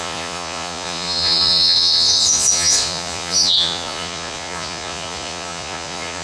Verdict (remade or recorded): remade